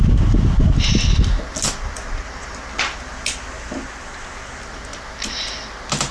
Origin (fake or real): real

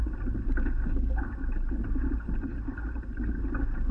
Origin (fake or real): real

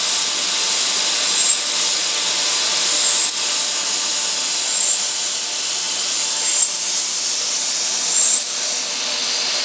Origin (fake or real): real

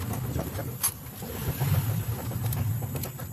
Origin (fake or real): real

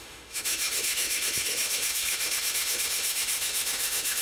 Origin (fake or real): fake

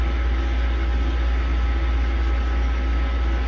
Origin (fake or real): real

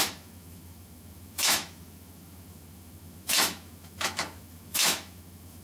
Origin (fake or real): fake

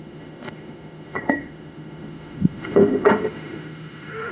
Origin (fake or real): fake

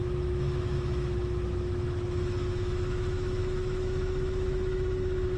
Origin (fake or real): fake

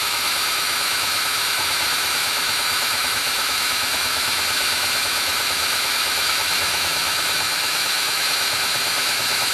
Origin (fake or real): fake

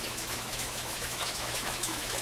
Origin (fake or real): fake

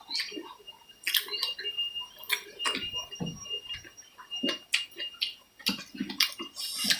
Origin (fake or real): real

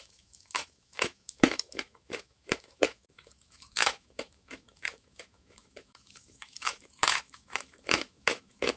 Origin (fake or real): fake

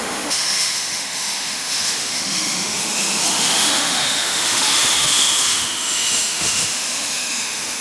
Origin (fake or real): fake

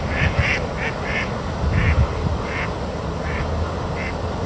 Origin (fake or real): real